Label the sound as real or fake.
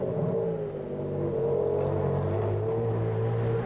real